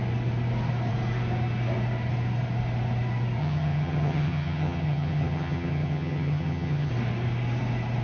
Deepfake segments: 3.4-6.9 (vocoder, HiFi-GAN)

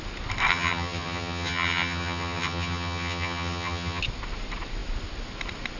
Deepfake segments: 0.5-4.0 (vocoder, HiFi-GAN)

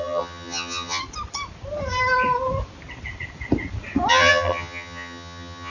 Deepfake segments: 0.0-1.0 (vocoder, HiFi-GAN); 4.1-5.7